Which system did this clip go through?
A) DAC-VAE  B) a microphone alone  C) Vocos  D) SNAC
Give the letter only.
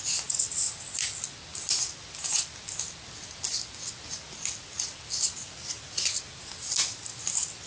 B